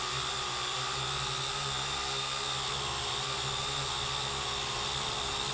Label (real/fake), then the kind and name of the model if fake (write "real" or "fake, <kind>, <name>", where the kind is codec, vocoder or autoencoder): real